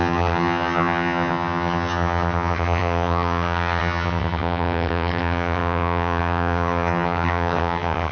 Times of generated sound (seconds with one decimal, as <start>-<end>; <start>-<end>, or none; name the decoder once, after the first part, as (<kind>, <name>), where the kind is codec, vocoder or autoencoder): 0.0-8.1 (vocoder, HiFi-GAN)

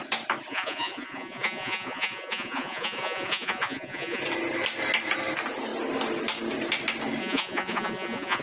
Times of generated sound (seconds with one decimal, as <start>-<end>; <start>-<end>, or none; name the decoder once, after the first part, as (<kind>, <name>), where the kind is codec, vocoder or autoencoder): 0.5-4.2 (vocoder, Vocos); 7.2-8.4